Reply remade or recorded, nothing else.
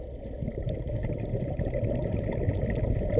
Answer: remade